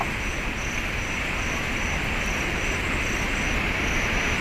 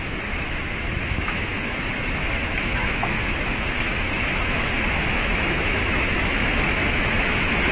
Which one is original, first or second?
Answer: first